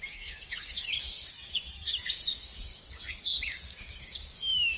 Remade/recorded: remade